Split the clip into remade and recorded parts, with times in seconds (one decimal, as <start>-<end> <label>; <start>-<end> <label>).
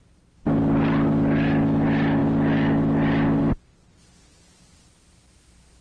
0.0-5.8 recorded